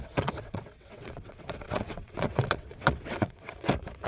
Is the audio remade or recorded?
remade